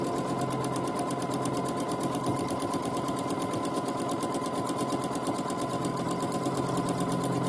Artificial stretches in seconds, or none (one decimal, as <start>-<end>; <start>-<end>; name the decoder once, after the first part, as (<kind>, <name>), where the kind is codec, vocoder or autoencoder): 2.3-3.1 (vocoder, BigVGAN v2); 5.9-6.7